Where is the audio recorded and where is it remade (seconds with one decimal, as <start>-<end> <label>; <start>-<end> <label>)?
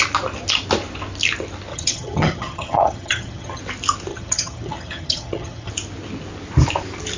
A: 0.0-1.7 recorded; 1.7-3.6 remade; 3.6-4.1 recorded; 4.1-5.7 remade; 5.7-7.2 recorded